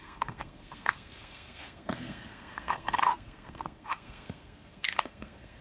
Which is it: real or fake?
fake